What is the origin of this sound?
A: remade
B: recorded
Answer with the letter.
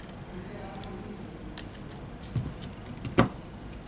B